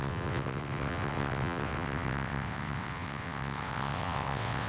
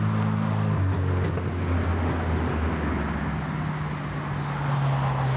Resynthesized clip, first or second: first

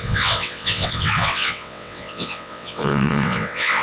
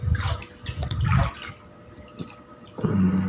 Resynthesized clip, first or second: first